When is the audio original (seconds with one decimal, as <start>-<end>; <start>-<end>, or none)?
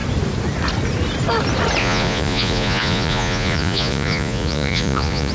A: 0.0-1.8